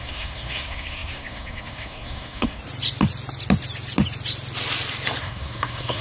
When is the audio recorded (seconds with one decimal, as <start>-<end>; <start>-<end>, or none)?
2.6-5.2